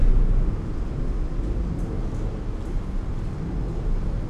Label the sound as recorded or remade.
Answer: recorded